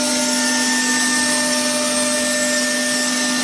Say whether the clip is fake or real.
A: real